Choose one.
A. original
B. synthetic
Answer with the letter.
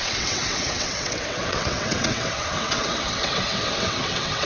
B